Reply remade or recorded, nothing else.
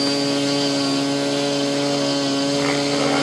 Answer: recorded